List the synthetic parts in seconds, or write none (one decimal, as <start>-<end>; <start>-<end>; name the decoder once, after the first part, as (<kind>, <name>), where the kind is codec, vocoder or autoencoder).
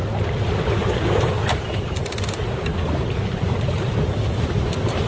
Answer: 3.1-5.1 (vocoder, BigVGAN v2)